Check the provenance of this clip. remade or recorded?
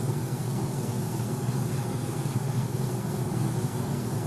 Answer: remade